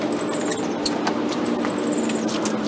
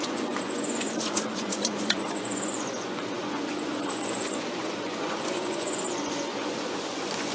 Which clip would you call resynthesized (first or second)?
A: second